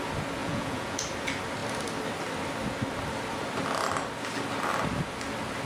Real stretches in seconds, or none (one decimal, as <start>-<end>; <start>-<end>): 0.0-0.4; 1.0-5.7